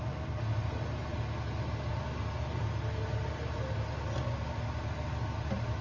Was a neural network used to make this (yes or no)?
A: no